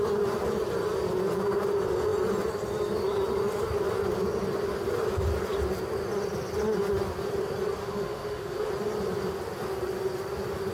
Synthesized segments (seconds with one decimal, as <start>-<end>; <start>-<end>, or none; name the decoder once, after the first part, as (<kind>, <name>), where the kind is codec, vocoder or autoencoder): 7.8-8.7 (autoencoder, DAC-VAE)